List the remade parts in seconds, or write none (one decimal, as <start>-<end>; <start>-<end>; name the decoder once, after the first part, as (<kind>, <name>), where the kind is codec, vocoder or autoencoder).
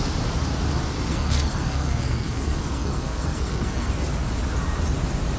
1.1-3.9 (codec, SNAC)